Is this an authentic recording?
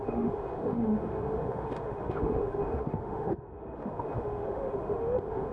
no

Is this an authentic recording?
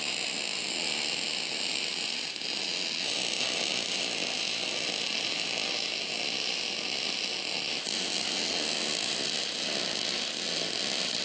yes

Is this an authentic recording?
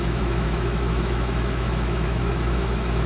no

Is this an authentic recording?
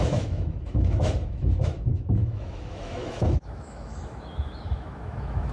no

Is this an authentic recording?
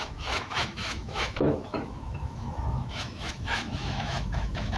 no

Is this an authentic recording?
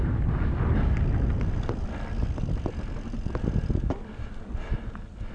yes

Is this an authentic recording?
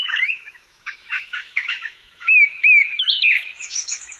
no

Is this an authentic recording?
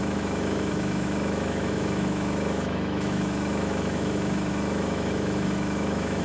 no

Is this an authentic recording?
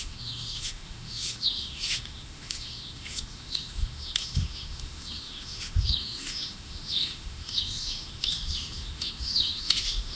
no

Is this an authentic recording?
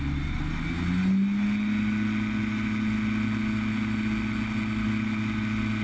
yes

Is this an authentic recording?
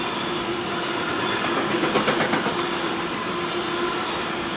yes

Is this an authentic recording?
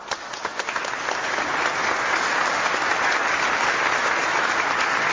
yes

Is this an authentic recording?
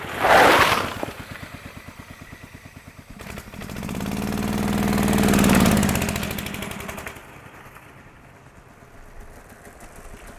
yes